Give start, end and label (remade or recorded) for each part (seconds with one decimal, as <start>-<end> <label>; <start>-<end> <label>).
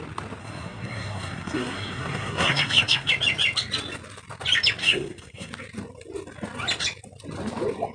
0.0-0.4 recorded; 0.4-3.1 remade; 3.1-4.8 recorded; 4.8-5.5 remade; 5.5-7.9 recorded